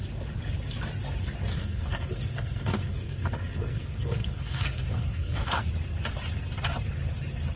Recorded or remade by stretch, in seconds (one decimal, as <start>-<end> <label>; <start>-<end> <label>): 0.0-1.5 recorded; 1.5-5.7 remade; 5.7-7.6 recorded